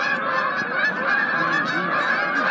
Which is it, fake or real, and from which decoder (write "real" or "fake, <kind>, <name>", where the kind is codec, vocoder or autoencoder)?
real